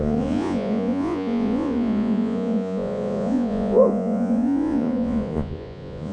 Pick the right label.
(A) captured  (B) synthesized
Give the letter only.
B